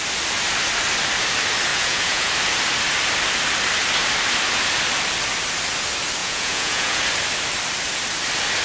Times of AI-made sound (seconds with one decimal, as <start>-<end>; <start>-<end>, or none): 1.7-2.3; 6.2-7.0